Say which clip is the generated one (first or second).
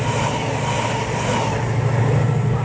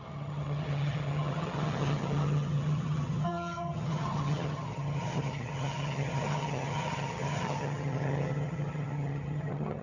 second